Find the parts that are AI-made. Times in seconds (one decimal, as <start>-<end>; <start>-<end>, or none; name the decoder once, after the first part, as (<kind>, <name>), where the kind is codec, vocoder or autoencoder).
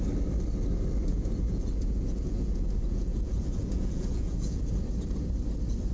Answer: 1.1-4.6 (vocoder, Vocos)